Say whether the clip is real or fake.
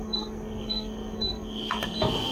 fake